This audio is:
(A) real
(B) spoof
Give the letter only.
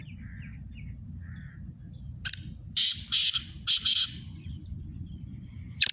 B